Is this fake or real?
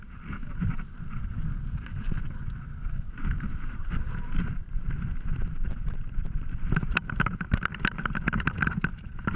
real